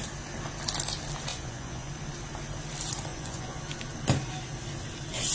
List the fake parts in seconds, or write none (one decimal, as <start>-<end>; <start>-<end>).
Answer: 1.3-1.9; 3.1-3.6